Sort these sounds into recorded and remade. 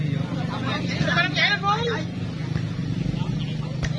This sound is recorded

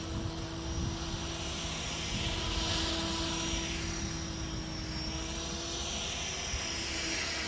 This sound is recorded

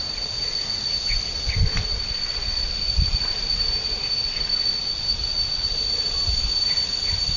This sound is recorded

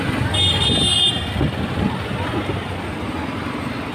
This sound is recorded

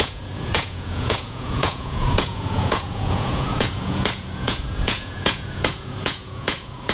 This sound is remade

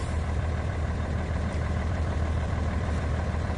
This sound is remade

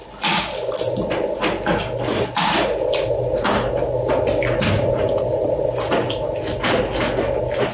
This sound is recorded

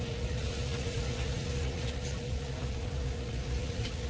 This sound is remade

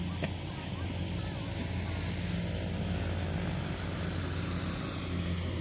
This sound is recorded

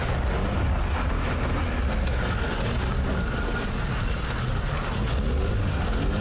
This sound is recorded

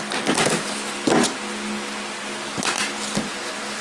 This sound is recorded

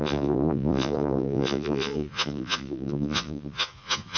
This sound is remade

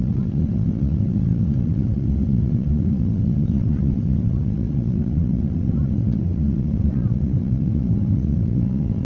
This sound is remade